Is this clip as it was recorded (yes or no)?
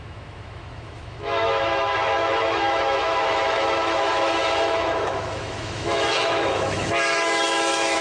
no